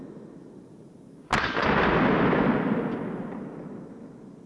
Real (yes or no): yes